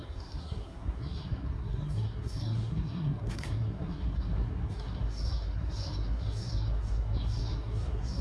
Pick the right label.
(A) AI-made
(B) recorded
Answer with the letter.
A